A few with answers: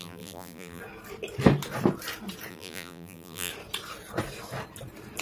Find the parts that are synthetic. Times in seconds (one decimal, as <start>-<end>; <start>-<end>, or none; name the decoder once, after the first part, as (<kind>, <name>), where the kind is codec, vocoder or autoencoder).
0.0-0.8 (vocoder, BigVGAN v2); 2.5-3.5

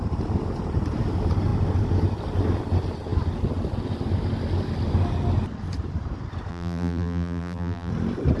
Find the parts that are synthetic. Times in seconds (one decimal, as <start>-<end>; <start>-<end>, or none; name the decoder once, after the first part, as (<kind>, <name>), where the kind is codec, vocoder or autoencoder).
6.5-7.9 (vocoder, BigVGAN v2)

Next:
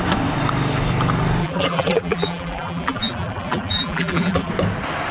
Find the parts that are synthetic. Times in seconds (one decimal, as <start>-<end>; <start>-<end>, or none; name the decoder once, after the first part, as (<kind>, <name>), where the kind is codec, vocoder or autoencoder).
1.4-4.5 (vocoder, BigVGAN v2)

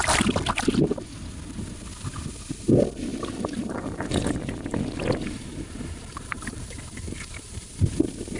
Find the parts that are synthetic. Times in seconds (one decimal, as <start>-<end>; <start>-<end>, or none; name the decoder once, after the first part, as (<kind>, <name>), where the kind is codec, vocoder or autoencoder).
3.1-7.7 (vocoder, BigVGAN v2)

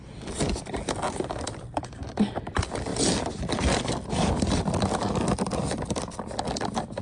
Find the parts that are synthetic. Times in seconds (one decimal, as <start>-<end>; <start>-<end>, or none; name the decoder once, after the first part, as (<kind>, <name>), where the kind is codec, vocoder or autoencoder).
0.0-7.0 (vocoder, BigVGAN v2)

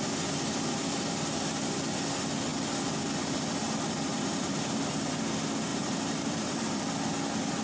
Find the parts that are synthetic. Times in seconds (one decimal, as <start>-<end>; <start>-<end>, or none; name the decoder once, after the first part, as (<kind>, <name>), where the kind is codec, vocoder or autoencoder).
4.1-4.8 (vocoder, BigVGAN v2); 5.7-6.8

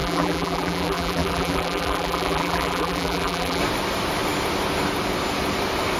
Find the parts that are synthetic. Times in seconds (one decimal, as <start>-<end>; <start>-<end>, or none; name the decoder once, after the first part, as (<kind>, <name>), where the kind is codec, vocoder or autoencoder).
0.0-3.6 (vocoder, BigVGAN v2)

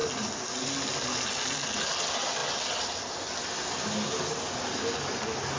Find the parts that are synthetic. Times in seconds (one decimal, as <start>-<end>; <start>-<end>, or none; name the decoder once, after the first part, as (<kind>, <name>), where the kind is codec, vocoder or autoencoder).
none